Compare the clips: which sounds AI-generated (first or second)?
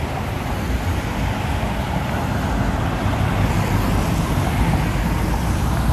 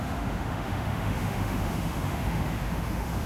second